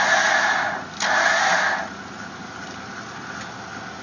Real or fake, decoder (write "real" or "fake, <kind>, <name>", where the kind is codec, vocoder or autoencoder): real